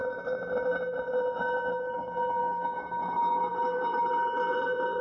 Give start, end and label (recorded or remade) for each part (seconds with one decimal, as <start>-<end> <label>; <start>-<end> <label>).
0.0-2.4 recorded; 2.4-4.0 remade; 4.0-5.0 recorded